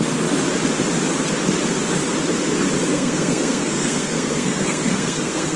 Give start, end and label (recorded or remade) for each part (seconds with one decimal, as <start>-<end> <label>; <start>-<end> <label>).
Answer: 0.0-2.9 recorded; 2.9-5.6 remade